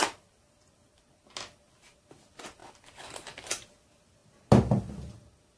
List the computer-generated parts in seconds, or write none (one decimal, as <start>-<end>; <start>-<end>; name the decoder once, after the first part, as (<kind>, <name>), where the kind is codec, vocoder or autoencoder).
none